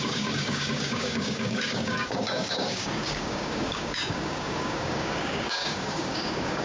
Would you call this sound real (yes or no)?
no